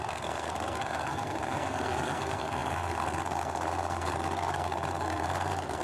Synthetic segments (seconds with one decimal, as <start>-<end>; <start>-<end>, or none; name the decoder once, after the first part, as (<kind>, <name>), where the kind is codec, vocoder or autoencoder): 0.0-5.8 (codec, SNAC)